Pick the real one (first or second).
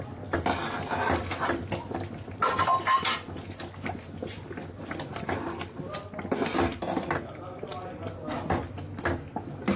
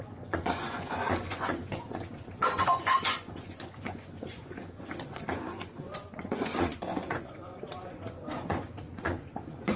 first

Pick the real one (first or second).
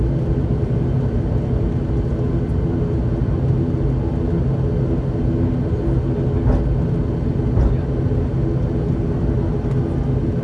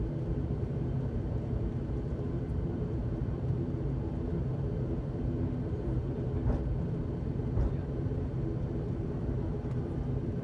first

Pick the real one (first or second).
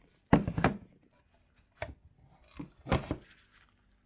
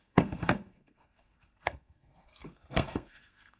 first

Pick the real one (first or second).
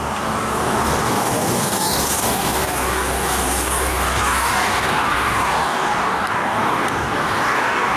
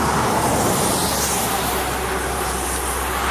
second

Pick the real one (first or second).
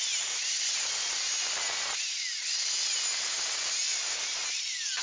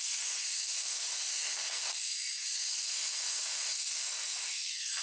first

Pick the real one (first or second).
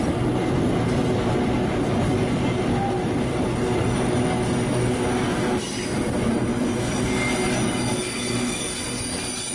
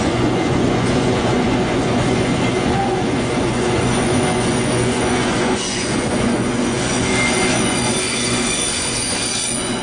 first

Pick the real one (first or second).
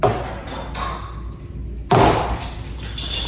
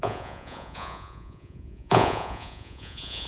first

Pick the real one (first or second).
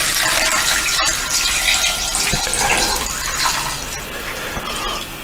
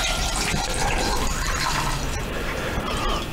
first